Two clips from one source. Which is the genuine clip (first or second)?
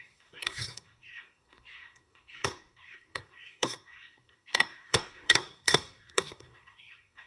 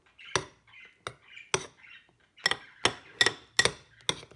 second